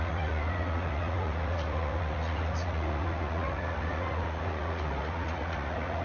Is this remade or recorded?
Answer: remade